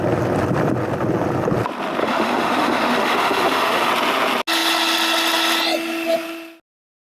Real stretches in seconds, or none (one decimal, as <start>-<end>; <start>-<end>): 0.0-2.0; 3.9-7.1